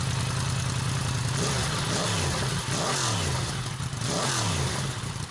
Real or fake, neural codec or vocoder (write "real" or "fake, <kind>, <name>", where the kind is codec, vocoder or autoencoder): real